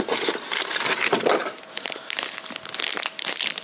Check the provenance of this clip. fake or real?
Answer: fake